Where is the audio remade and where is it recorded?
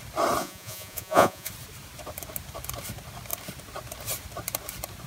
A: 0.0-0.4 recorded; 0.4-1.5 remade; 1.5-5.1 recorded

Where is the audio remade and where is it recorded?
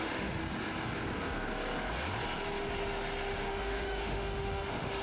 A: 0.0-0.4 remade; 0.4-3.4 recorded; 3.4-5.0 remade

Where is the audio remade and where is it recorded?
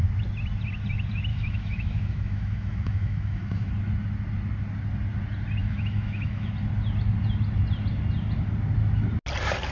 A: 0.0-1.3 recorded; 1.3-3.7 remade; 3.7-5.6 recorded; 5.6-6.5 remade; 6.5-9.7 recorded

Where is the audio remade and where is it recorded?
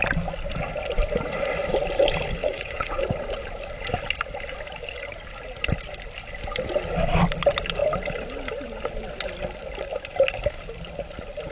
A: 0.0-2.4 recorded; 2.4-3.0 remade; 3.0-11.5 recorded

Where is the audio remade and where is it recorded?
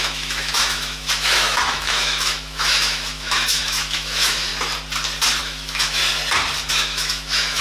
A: 0.0-4.5 remade; 4.5-5.4 recorded; 5.4-6.0 remade; 6.0-6.7 recorded; 6.7-7.6 remade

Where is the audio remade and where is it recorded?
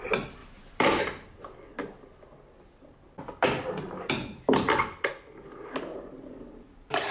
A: 0.0-0.4 recorded; 0.4-1.0 remade; 1.0-5.9 recorded; 5.9-7.1 remade